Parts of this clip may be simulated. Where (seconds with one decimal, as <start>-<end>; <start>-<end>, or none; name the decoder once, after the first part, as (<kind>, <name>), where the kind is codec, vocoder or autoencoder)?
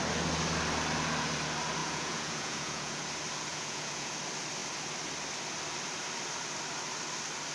1.8-3.0 (vocoder, Vocos); 3.5-4.1